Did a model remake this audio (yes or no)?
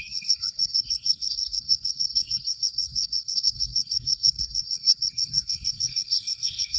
yes